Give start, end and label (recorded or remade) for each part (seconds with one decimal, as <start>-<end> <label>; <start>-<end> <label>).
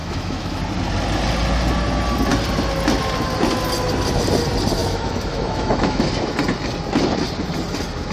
0.0-0.6 remade; 0.6-4.8 recorded; 4.8-6.1 remade; 6.1-8.1 recorded